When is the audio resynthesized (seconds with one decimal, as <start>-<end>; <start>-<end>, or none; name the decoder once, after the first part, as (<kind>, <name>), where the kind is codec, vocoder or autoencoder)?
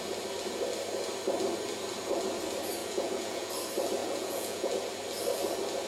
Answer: 2.8-3.5 (vocoder, Vocos); 4.0-4.7